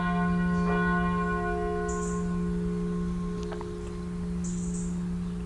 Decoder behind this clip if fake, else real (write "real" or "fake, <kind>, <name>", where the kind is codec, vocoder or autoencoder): real